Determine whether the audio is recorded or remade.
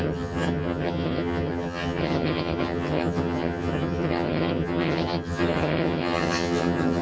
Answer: remade